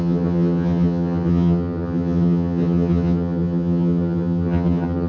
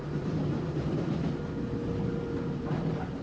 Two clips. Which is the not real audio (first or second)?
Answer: first